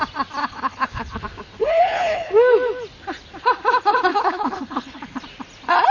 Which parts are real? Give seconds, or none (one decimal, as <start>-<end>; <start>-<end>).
0.0-0.4; 1.2-1.6; 2.3-4.1; 5.2-5.9